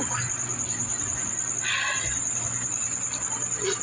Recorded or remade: recorded